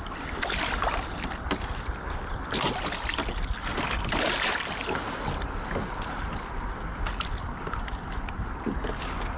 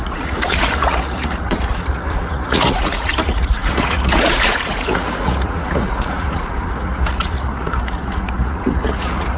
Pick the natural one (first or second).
first